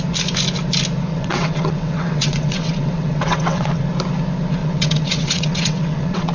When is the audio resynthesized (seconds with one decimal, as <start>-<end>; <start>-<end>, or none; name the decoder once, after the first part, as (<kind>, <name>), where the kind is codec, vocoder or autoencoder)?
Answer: 1.1-3.8 (vocoder, WaveNeXt); 4.6-6.3